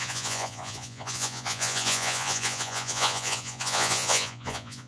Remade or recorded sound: remade